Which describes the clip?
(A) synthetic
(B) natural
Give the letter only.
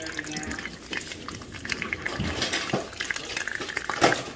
B